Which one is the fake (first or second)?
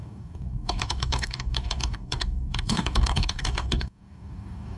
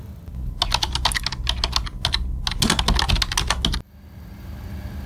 first